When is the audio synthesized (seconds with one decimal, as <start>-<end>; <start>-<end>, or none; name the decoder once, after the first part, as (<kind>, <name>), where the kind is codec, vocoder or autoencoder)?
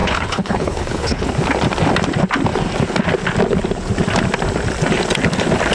0.0-1.3 (codec, HILCodec)